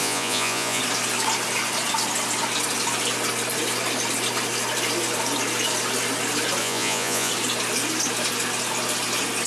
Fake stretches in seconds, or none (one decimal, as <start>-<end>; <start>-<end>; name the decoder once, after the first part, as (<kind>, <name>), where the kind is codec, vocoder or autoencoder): 0.0-0.8 (vocoder, Vocos); 6.6-7.3